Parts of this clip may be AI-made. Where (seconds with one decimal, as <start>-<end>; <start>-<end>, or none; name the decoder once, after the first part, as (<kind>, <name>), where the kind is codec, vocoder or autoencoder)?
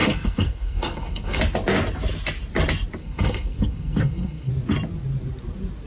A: 0.0-1.4 (codec, SNAC); 3.0-4.5